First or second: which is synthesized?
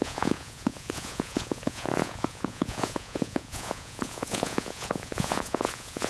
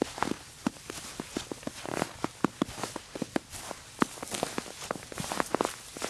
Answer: first